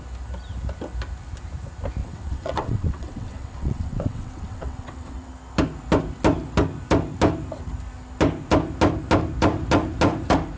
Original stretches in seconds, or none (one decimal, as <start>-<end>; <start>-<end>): 0.0-2.0; 5.3-10.6